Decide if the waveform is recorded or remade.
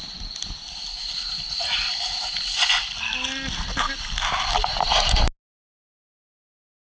recorded